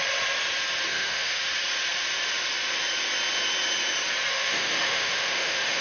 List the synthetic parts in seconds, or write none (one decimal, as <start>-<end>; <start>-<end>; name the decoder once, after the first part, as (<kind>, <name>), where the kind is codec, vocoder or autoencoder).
0.9-1.4 (autoencoder, DAC-VAE); 4.3-5.8